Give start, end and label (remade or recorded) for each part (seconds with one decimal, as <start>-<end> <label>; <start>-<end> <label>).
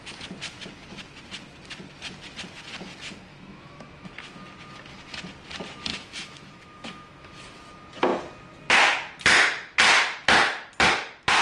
0.0-3.3 recorded; 3.3-4.1 remade; 4.1-5.9 recorded; 5.9-7.4 remade; 7.4-11.4 recorded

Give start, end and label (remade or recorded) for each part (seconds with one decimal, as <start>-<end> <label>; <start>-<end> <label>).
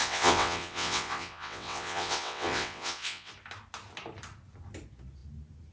0.0-3.3 remade; 3.3-5.7 recorded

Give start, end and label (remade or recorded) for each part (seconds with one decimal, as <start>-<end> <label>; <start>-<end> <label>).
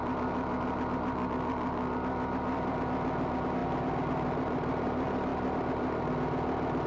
0.0-6.9 recorded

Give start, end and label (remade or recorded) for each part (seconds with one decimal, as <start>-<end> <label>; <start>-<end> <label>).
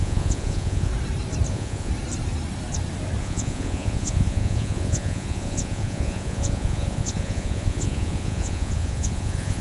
0.0-0.9 remade; 0.9-1.5 recorded; 1.5-1.9 remade; 1.9-3.2 recorded; 3.2-9.6 remade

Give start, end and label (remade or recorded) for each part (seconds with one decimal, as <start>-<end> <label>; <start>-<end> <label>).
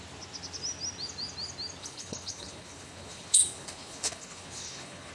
0.0-1.8 recorded; 1.8-5.1 remade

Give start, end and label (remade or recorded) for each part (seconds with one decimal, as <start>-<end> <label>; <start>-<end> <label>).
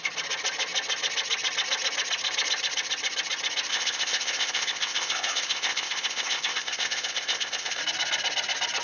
0.0-3.7 recorded; 3.7-7.8 remade; 7.8-8.8 recorded